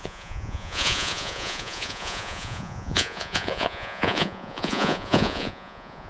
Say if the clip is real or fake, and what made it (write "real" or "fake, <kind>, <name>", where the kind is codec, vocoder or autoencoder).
fake, vocoder, Vocos